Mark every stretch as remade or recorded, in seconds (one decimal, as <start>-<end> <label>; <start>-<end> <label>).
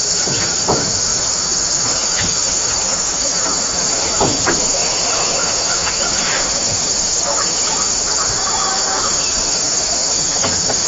0.0-10.9 remade